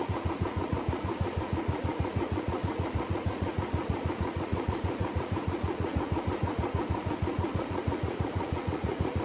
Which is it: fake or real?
fake